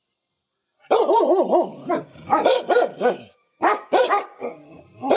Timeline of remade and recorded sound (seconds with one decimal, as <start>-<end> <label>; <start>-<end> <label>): 0.0-1.7 recorded; 1.7-4.8 remade; 4.8-5.2 recorded